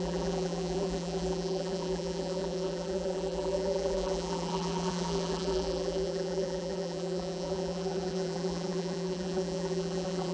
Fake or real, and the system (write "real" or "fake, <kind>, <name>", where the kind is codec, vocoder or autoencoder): fake, vocoder, BigVGAN v2